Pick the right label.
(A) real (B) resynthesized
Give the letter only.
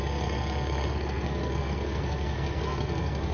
B